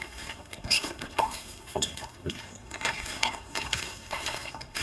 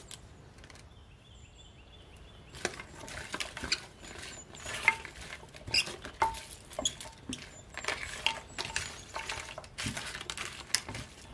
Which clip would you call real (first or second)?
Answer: second